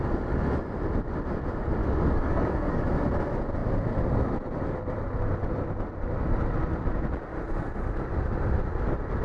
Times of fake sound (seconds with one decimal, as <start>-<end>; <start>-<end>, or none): 1.8-2.8